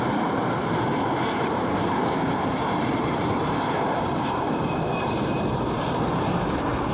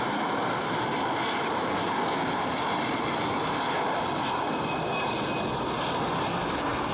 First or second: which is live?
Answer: second